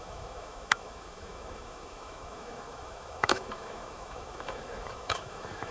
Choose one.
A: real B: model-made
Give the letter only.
B